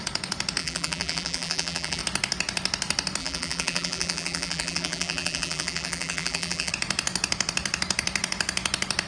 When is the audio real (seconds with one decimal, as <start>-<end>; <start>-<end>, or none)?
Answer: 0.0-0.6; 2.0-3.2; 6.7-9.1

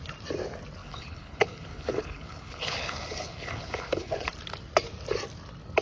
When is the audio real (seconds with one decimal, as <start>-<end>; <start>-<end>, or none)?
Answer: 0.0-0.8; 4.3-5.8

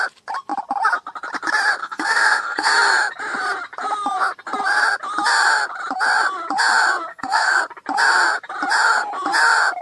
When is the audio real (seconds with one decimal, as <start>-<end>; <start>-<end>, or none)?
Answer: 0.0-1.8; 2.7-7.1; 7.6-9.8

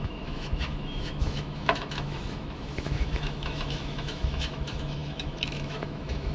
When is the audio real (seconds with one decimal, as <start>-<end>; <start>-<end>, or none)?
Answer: none

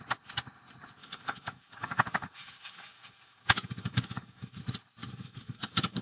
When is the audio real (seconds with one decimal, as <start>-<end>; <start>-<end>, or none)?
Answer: 0.0-1.0; 4.6-5.0

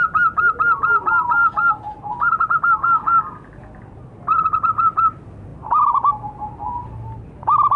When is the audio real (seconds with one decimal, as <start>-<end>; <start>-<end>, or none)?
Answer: 0.0-7.8

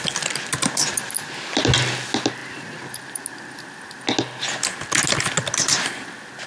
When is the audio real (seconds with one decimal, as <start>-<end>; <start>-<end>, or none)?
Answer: 0.0-6.5

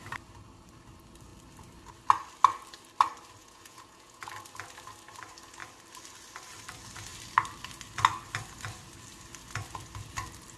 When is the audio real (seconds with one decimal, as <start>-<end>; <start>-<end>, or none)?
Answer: 0.0-3.4; 4.3-10.6